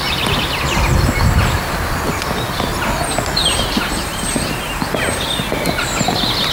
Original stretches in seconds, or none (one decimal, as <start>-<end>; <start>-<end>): 0.0-3.4; 5.3-6.5